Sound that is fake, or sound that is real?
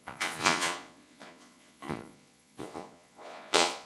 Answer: fake